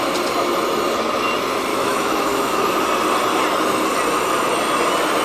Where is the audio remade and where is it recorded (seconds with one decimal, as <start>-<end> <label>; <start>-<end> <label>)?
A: 0.0-1.7 recorded; 1.7-2.6 remade; 2.6-5.2 recorded